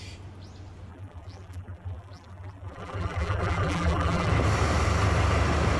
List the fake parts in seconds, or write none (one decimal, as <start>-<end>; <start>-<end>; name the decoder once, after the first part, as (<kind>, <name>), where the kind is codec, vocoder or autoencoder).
0.9-4.3 (vocoder, BigVGAN v2)